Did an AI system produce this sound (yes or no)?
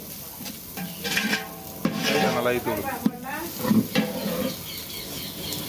no